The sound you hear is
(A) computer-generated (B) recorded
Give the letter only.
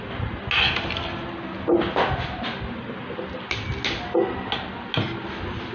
B